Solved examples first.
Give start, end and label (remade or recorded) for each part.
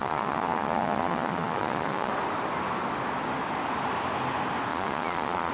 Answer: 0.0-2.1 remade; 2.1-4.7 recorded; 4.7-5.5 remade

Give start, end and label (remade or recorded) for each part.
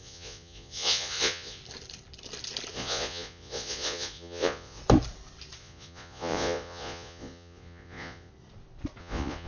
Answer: 0.0-1.6 remade; 1.6-2.7 recorded; 2.7-4.8 remade; 4.8-5.6 recorded; 5.6-8.3 remade; 8.3-9.0 recorded; 9.0-9.5 remade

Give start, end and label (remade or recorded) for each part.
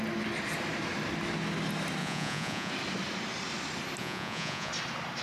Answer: 0.0-2.0 recorded; 2.0-2.7 remade; 2.7-4.0 recorded; 4.0-4.7 remade; 4.7-5.2 recorded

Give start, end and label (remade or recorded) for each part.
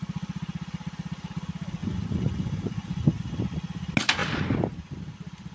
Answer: 0.0-1.8 recorded; 1.8-3.2 remade; 3.2-5.5 recorded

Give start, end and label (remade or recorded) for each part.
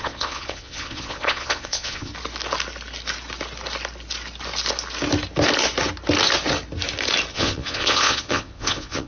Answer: 0.0-2.1 remade; 2.1-7.3 recorded; 7.3-9.1 remade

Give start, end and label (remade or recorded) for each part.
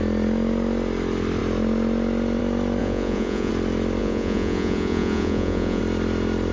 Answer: 0.0-2.8 recorded; 2.8-3.5 remade; 3.5-4.0 recorded; 4.0-5.8 remade; 5.8-6.5 recorded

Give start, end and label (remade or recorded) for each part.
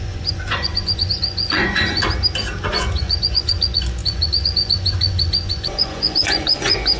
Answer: 0.0-2.0 remade; 2.0-2.7 recorded; 2.7-7.0 remade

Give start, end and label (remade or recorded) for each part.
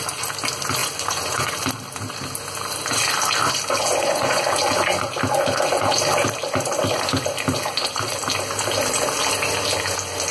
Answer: 0.0-0.8 recorded; 0.8-1.5 remade; 1.5-3.8 recorded; 3.8-4.4 remade; 4.4-10.3 recorded